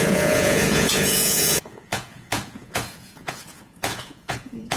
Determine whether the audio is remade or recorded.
remade